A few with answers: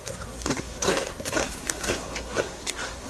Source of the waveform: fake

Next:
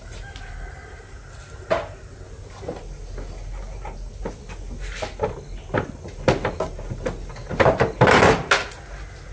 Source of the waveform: real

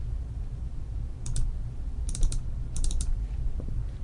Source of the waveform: fake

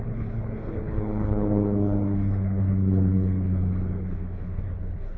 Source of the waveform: fake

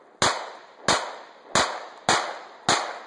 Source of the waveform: real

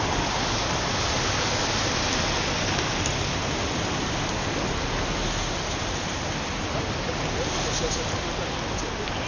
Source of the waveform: real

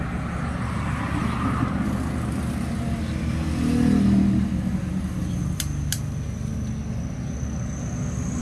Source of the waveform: real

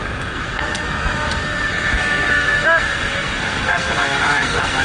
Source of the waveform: fake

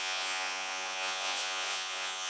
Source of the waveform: fake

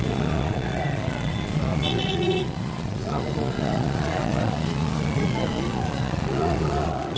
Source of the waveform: fake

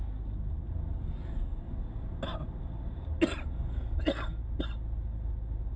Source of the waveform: real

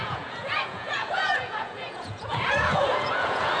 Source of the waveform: fake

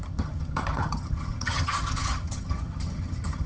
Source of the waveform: fake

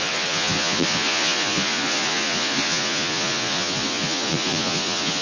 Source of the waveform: fake